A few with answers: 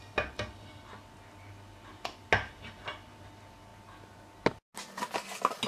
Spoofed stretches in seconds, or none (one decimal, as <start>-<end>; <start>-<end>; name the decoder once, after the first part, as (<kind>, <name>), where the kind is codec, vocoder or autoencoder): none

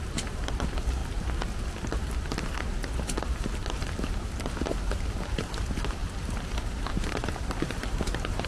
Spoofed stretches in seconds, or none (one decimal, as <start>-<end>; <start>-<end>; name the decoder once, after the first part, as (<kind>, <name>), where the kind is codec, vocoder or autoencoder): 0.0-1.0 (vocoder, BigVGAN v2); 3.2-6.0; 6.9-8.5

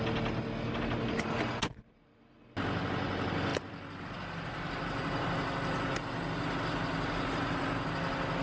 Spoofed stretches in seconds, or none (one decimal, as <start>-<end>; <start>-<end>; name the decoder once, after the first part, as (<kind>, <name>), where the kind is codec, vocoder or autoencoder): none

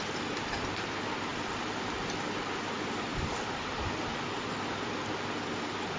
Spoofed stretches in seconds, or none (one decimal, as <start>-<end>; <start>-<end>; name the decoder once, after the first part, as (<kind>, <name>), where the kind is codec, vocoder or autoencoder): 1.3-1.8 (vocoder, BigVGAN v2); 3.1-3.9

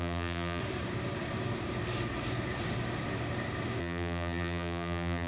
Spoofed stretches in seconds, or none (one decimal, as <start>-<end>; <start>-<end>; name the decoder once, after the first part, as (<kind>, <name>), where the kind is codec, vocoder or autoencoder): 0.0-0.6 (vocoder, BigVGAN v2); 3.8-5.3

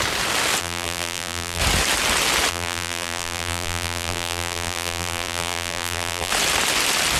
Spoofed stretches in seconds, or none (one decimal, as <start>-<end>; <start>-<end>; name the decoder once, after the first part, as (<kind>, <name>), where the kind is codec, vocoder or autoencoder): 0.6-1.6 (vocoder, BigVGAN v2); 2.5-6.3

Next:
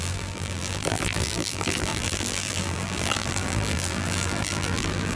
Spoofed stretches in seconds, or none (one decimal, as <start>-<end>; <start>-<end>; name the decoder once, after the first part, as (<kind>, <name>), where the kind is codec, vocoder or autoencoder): 0.0-5.2 (vocoder, BigVGAN v2)